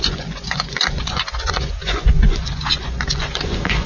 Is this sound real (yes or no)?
no